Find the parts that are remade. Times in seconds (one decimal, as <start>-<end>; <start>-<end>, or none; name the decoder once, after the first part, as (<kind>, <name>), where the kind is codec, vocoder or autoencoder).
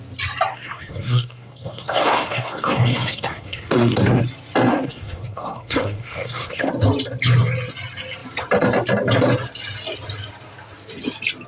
0.5-4.2 (codec, SNAC); 4.7-6.7